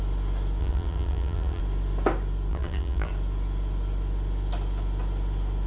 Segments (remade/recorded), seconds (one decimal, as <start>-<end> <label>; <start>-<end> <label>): 0.0-0.6 recorded; 0.6-1.6 remade; 1.6-2.5 recorded; 2.5-3.1 remade; 3.1-5.7 recorded